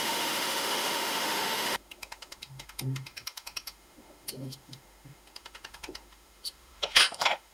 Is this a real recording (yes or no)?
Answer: no